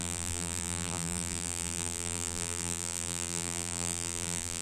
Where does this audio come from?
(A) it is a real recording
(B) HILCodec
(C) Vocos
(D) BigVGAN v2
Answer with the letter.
D